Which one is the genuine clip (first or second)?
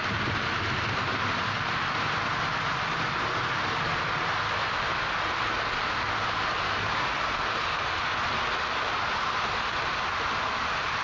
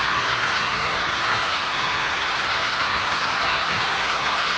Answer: first